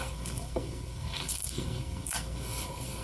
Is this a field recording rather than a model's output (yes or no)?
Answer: no